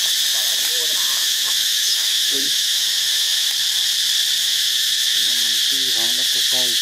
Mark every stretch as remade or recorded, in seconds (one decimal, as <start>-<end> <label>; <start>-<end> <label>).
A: 0.0-1.2 recorded; 1.2-3.5 remade; 3.5-4.4 recorded; 4.4-5.3 remade; 5.3-6.8 recorded